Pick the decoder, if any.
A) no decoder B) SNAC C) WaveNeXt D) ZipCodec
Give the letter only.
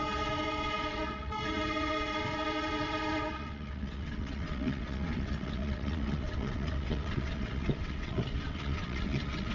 C